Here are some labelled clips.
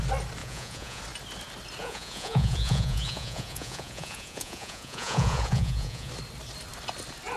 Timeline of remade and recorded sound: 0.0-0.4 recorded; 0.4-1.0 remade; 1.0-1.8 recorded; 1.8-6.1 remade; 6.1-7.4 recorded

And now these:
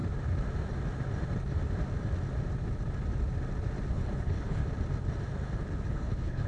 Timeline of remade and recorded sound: 0.0-3.9 recorded; 3.9-4.6 remade; 4.6-5.9 recorded; 5.9-6.5 remade

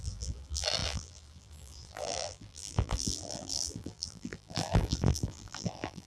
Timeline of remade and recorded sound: 0.0-6.1 remade

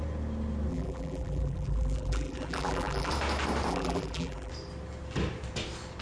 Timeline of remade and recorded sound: 0.0-0.7 recorded; 0.7-3.1 remade; 3.1-3.7 recorded; 3.7-4.5 remade; 4.5-6.0 recorded

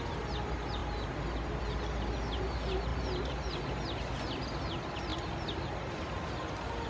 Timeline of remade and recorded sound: 0.0-2.9 recorded; 2.9-3.6 remade; 3.6-6.9 recorded

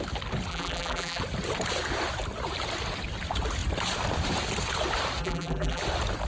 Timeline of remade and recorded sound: 0.0-0.5 recorded; 0.5-1.2 remade; 1.2-5.2 recorded; 5.2-5.8 remade; 5.8-6.3 recorded

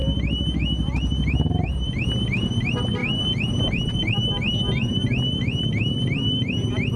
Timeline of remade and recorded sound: 0.0-7.0 recorded

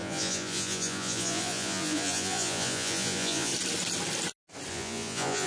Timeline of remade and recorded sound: 0.0-3.5 remade; 3.5-4.7 recorded; 4.7-5.5 remade